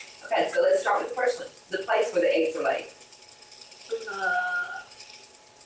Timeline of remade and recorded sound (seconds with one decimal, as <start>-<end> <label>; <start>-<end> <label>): 0.0-0.6 recorded; 0.6-1.6 remade; 1.6-4.8 recorded; 4.8-5.7 remade